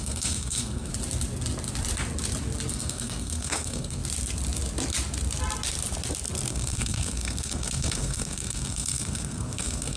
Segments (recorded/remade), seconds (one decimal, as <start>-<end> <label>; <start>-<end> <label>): 0.0-0.9 remade; 0.9-2.7 recorded; 2.7-4.0 remade; 4.0-6.5 recorded; 6.5-10.0 remade